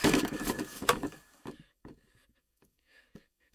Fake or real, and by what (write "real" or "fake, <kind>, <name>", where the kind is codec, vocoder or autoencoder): fake, codec, DAC